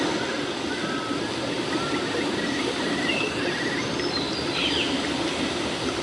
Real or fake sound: real